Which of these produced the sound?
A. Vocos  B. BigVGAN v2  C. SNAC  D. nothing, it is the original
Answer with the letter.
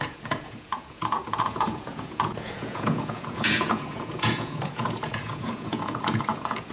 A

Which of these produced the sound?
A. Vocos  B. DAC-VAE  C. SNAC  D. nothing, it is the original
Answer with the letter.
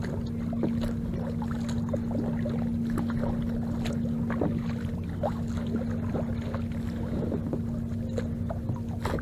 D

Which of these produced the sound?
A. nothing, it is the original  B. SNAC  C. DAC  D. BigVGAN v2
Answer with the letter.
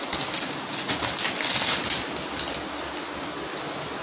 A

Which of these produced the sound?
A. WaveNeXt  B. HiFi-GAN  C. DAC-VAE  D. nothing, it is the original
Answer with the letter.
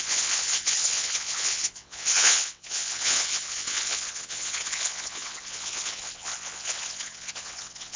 A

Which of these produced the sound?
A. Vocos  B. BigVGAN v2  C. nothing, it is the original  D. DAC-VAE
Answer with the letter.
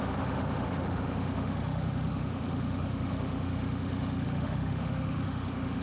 D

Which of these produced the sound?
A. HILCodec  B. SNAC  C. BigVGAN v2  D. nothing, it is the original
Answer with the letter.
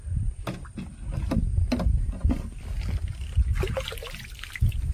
D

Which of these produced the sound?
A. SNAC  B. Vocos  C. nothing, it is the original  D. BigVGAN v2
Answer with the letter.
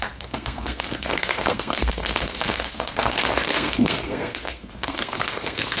A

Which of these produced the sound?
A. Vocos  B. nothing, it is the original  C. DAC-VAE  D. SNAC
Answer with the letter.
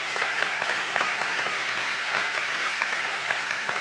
D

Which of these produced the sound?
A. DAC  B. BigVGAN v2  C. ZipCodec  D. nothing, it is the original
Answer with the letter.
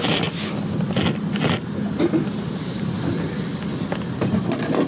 D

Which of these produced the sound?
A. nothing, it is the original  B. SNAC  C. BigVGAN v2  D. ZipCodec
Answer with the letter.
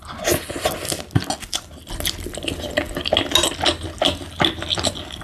A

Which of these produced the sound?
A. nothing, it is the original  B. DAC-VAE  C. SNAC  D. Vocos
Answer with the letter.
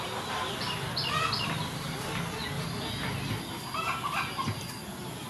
A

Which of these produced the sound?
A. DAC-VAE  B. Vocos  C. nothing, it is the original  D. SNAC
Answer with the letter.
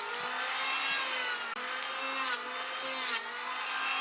C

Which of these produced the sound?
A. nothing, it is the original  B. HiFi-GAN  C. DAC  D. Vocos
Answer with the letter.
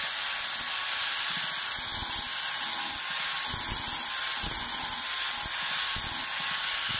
A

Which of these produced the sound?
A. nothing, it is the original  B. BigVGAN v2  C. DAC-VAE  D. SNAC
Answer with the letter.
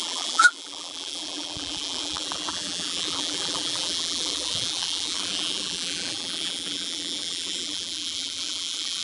B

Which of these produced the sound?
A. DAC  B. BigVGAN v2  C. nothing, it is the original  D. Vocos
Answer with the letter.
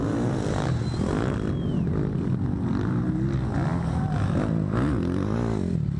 C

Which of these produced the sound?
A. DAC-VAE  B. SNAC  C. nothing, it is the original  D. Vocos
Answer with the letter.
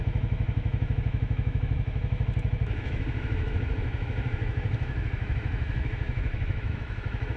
A